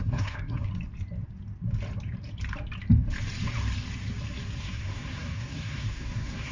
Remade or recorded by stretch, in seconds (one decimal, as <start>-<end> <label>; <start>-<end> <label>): 0.0-0.7 remade; 0.7-4.6 recorded; 4.6-6.5 remade